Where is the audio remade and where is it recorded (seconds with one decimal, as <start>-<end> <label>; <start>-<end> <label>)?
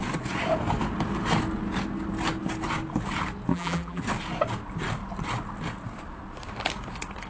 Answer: 0.0-3.5 recorded; 3.5-4.0 remade; 4.0-7.3 recorded